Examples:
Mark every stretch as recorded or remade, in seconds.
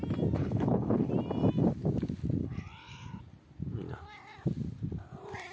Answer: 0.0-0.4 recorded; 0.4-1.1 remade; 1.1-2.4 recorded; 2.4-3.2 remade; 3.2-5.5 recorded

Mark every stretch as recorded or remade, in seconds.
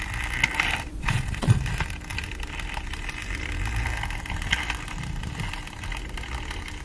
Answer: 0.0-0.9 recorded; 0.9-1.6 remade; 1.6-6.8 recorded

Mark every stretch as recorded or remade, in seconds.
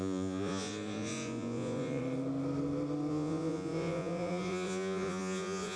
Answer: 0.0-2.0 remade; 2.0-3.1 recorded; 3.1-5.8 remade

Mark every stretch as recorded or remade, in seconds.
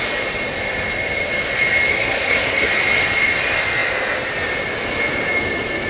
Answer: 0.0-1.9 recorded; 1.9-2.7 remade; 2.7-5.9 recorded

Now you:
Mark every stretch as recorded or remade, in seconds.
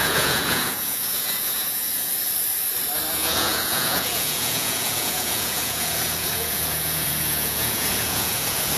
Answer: 0.0-2.1 remade; 2.1-3.1 recorded; 3.1-8.8 remade